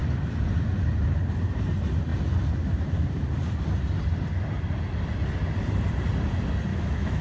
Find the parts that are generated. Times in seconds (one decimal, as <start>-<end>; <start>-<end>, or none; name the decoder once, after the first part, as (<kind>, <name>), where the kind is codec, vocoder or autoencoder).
6.7-7.2 (autoencoder, DAC-VAE)